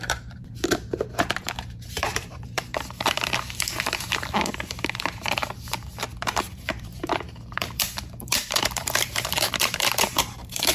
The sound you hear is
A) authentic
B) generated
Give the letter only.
B